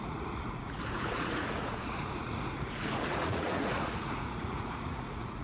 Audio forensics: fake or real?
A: fake